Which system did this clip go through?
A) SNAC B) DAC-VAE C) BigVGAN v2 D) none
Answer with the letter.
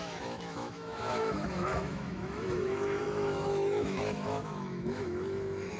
B